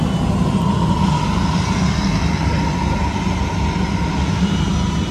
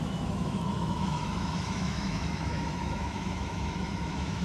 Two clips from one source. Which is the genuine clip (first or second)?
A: first